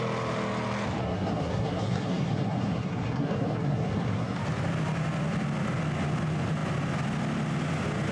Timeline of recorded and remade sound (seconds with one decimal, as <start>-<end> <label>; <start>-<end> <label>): 0.0-1.0 recorded; 1.0-4.4 remade; 4.4-8.1 recorded